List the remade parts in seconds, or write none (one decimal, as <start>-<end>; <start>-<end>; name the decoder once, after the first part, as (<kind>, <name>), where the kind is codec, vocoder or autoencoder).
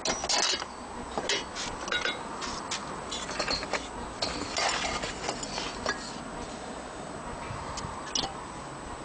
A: none